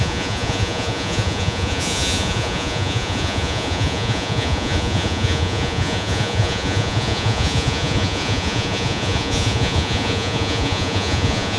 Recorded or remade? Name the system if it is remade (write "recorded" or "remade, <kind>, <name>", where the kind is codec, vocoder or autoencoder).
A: remade, vocoder, Vocos